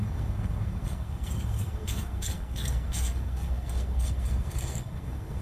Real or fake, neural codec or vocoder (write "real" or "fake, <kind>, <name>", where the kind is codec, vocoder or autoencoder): fake, codec, SNAC